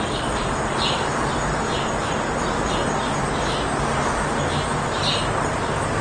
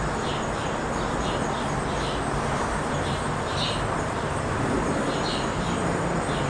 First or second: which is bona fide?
first